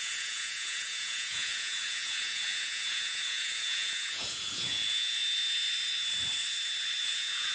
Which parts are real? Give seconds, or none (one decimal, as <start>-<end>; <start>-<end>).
5.2-7.0